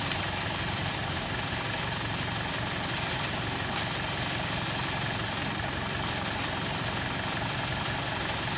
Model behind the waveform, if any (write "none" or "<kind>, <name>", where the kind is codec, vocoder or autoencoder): none